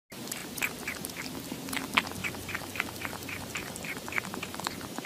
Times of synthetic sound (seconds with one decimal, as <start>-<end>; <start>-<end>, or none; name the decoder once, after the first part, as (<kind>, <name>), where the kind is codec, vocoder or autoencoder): 2.2-5.1 (vocoder, BigVGAN v2)